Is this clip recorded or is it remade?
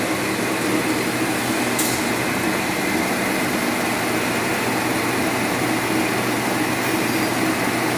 recorded